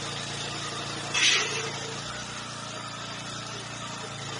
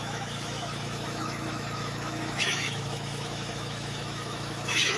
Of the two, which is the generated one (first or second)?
second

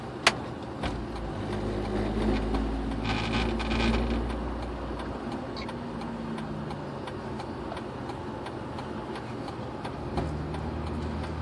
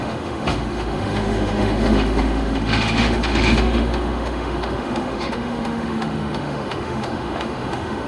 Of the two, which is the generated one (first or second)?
second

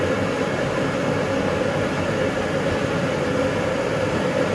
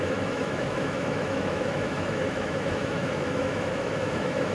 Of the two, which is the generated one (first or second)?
second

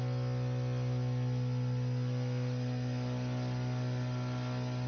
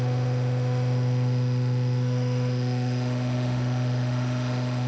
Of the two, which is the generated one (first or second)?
second